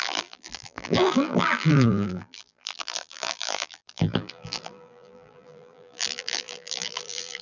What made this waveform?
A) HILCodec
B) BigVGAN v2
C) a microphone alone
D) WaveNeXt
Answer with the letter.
B